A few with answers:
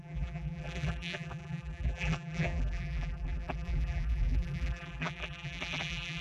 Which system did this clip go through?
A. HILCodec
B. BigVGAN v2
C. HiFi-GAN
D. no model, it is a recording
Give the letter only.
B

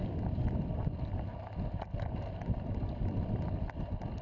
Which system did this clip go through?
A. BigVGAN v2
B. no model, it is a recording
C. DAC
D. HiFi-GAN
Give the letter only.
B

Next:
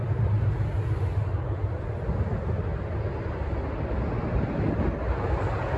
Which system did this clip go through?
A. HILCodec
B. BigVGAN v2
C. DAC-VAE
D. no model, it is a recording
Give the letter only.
D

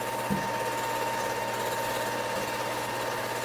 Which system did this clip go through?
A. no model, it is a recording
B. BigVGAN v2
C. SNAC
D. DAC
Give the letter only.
A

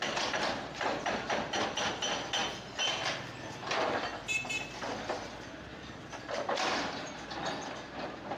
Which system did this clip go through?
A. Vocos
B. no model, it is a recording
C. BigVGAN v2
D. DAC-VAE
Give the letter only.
B